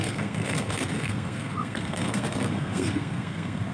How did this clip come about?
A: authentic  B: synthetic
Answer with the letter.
B